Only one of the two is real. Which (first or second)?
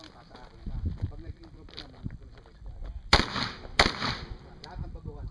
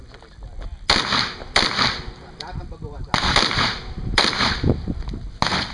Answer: second